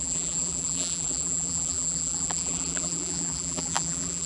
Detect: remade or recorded remade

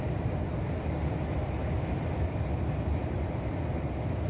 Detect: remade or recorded recorded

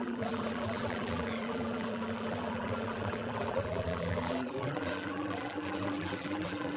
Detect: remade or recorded remade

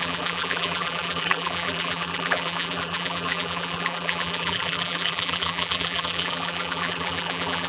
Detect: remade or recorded remade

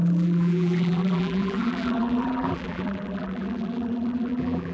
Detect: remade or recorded remade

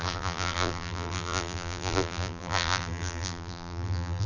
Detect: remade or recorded remade